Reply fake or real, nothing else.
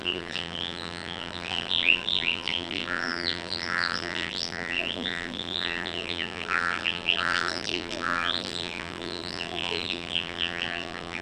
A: fake